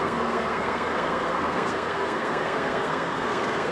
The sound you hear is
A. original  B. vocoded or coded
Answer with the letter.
B